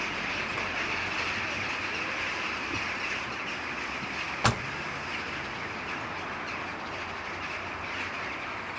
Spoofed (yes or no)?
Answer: no